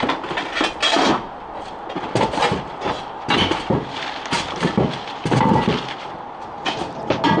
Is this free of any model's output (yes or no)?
yes